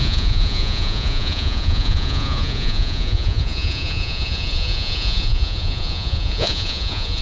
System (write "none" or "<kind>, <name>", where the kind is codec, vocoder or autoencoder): vocoder, Vocos